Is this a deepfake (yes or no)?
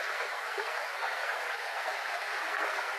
yes